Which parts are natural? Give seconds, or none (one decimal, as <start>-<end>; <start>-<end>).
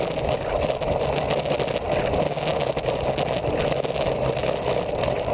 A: 0.0-5.3